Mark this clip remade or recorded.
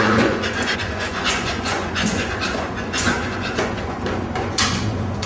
remade